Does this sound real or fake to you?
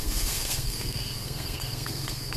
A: fake